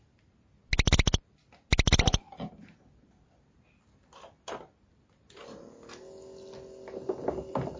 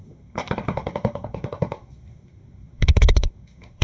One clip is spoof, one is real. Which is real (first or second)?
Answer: first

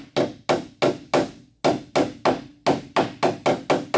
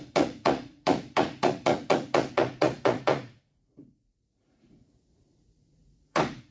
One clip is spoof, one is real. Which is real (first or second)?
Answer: first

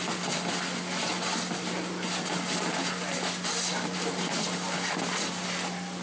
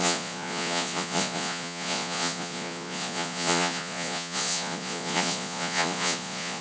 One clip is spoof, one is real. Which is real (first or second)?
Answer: first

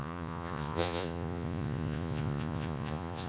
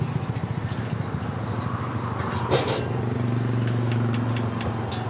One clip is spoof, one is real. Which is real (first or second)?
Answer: second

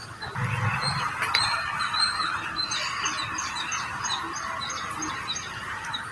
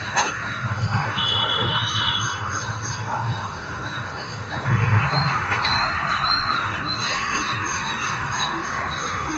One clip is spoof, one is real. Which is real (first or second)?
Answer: first